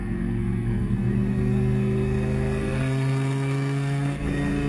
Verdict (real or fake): fake